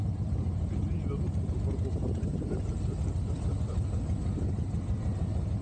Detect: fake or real real